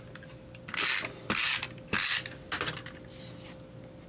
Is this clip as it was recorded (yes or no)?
yes